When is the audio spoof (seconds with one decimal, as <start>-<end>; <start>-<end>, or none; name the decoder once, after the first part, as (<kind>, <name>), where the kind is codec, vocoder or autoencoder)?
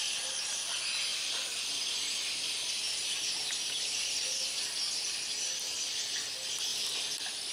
none